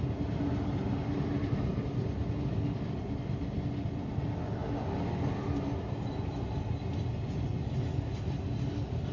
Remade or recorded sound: recorded